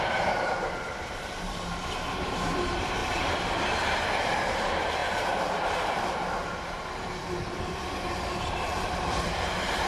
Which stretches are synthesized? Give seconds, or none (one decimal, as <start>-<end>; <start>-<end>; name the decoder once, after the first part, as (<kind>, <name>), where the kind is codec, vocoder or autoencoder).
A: 0.0-3.0 (vocoder, BigVGAN v2); 4.2-5.0; 7.6-9.9